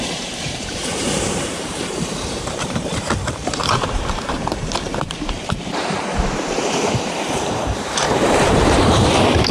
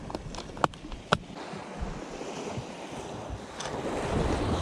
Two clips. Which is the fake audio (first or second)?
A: first